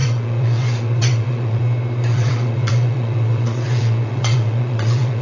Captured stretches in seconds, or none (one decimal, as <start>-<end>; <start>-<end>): 1.6-2.1